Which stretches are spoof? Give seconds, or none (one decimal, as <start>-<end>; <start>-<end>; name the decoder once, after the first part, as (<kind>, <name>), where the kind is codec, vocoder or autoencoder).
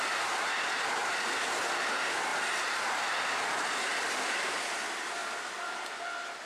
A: 1.0-1.7 (vocoder, BigVGAN v2); 5.2-6.0